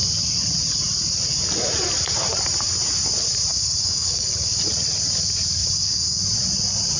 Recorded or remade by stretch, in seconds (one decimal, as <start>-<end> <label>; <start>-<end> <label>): 0.0-3.5 recorded; 3.5-4.6 remade; 4.6-5.6 recorded; 5.6-6.2 remade; 6.2-7.0 recorded